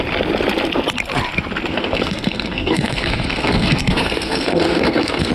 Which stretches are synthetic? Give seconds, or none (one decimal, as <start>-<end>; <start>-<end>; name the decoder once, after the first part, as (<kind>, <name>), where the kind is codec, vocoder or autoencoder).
1.7-5.3 (codec, SNAC)

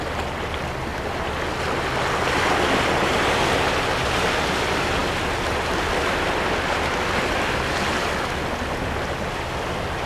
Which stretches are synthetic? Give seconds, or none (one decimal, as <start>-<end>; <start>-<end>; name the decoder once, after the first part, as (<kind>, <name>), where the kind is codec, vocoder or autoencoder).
none

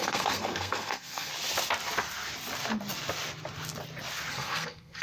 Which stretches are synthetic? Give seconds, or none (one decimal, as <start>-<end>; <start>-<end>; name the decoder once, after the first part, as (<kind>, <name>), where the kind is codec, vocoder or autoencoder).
0.0-1.3 (codec, SNAC); 4.3-5.0

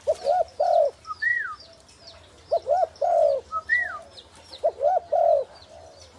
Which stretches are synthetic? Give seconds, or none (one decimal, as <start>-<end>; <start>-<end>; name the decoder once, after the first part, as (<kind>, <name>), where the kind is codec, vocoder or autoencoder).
none

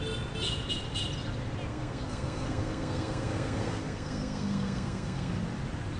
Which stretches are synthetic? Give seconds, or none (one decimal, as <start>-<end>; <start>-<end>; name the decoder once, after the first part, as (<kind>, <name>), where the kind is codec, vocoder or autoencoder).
1.7-5.3 (codec, SNAC)